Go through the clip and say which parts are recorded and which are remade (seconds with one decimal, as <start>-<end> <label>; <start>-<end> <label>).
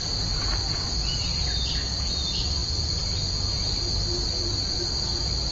0.0-1.1 recorded; 1.1-2.6 remade; 2.6-3.6 recorded; 3.6-5.5 remade